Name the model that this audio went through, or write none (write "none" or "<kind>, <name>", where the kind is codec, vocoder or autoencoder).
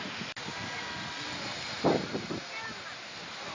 none